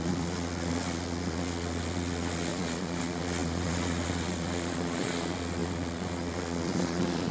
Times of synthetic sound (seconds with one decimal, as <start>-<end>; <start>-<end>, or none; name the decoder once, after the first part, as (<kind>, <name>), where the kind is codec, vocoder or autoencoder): 0.0-7.3 (vocoder, Vocos)